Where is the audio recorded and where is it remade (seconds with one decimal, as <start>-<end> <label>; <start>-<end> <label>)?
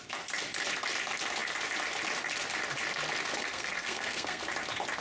0.0-3.4 recorded; 3.4-4.4 remade; 4.4-5.0 recorded